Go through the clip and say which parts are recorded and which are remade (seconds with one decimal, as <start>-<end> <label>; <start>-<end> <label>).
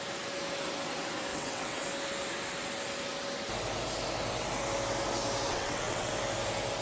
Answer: 0.0-1.3 recorded; 1.3-1.8 remade; 1.8-5.5 recorded; 5.5-6.1 remade; 6.1-6.8 recorded